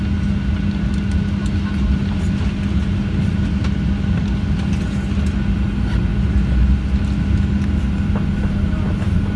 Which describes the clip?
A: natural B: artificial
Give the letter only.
A